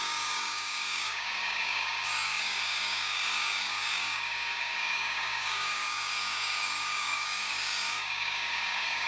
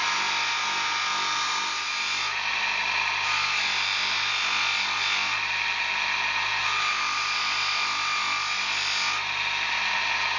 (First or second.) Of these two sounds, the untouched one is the second